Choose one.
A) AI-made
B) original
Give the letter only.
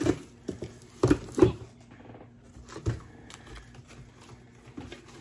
B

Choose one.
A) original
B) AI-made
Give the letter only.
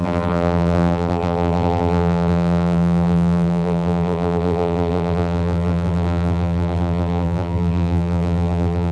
B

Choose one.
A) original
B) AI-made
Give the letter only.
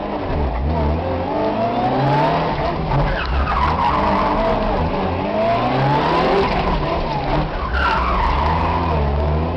A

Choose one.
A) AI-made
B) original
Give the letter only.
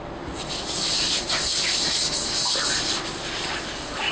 B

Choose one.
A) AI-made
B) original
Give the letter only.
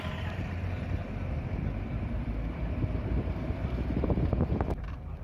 A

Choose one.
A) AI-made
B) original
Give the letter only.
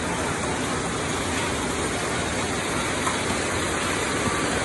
B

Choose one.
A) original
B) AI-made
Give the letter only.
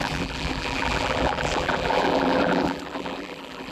B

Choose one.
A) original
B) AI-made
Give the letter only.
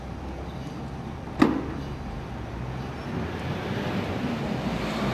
A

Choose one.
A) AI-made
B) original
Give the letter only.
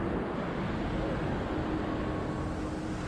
B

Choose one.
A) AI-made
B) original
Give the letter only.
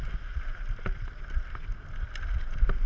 B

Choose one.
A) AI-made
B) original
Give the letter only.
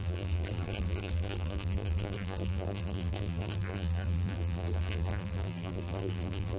A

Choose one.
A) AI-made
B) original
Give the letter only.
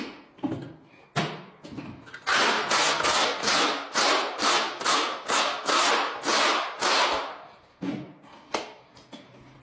B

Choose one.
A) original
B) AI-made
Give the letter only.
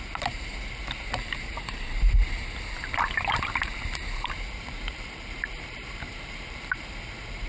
B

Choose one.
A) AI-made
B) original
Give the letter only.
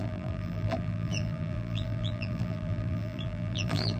A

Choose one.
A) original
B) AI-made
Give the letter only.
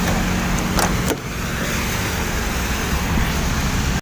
A